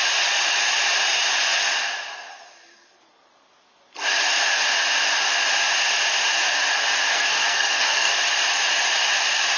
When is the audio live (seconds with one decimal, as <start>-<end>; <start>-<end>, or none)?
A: 0.0-7.1; 8.2-9.6